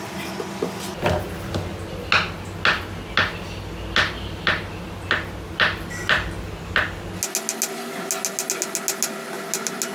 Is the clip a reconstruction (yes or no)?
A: no